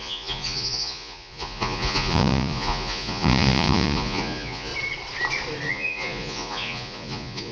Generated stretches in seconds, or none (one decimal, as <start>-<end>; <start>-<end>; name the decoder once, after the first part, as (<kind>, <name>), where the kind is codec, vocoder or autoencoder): 0.0-4.7 (vocoder, Vocos); 5.7-7.5